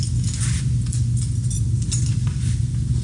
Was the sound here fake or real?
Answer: real